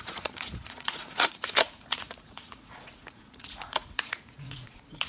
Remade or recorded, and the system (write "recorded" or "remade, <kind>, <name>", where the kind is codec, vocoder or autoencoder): remade, vocoder, Vocos